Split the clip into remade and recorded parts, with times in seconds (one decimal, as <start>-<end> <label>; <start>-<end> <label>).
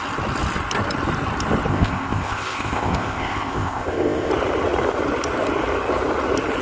0.0-1.7 recorded; 1.7-4.3 remade; 4.3-6.6 recorded